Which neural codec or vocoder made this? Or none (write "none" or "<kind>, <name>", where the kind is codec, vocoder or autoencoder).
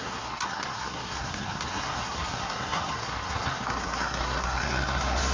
codec, SNAC